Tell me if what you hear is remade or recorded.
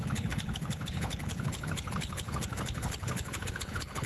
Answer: remade